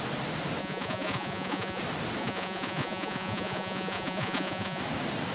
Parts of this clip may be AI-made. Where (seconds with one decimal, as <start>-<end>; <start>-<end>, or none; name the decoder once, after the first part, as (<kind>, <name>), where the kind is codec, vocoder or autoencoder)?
0.6-1.8 (vocoder, Vocos); 2.2-4.8